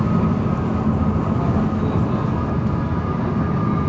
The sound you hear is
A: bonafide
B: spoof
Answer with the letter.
A